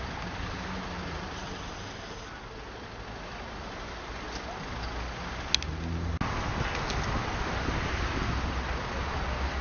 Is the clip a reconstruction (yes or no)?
no